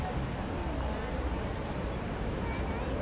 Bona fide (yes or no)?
yes